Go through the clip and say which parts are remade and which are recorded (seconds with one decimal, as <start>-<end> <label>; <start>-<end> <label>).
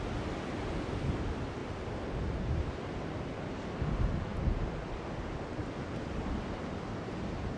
0.0-7.6 recorded